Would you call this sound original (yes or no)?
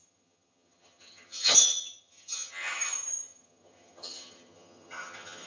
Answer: no